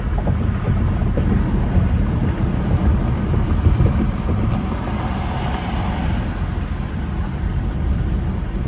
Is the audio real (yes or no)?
no